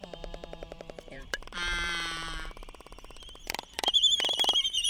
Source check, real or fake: fake